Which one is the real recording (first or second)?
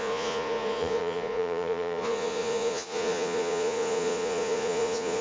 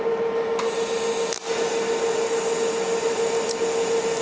second